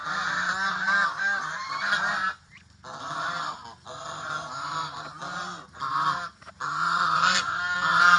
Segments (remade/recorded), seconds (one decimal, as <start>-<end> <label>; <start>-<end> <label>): 0.0-8.2 recorded